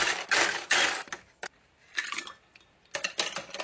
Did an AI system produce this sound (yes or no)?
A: no